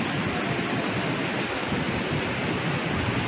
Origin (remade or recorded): recorded